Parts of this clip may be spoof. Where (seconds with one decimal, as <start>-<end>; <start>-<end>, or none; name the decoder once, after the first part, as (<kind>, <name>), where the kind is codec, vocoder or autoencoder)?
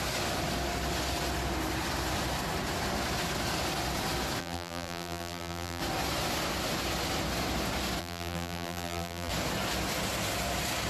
4.4-5.8 (vocoder, BigVGAN v2); 8.0-9.3